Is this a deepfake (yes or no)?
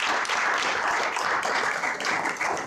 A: no